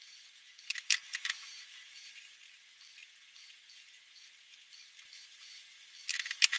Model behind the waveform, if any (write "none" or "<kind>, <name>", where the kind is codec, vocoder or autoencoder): none